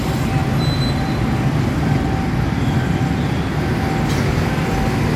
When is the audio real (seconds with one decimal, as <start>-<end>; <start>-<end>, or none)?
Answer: 0.0-5.2